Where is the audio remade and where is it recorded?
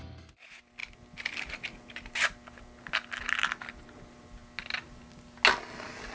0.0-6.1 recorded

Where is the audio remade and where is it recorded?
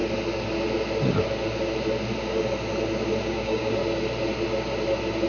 0.0-3.2 recorded; 3.2-3.8 remade; 3.8-5.3 recorded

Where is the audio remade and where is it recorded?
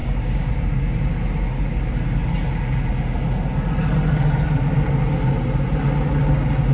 0.0-0.5 remade; 0.5-6.7 recorded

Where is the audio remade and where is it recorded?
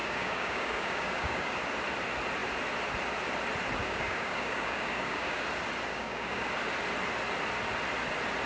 0.0-1.6 remade; 1.6-3.8 recorded; 3.8-5.4 remade; 5.4-5.9 recorded; 5.9-6.5 remade; 6.5-8.5 recorded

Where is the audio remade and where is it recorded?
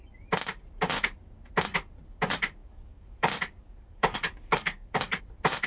0.0-2.6 recorded; 2.6-5.2 remade; 5.2-5.7 recorded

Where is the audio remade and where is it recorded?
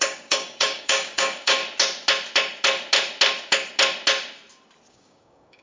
0.0-1.6 remade; 1.6-4.9 recorded; 4.9-5.6 remade